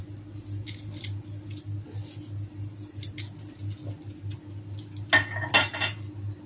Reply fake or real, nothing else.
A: real